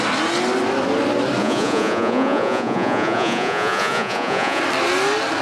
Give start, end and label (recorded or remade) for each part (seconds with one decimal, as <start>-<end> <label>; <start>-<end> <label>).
0.0-1.4 recorded; 1.4-4.6 remade; 4.6-5.4 recorded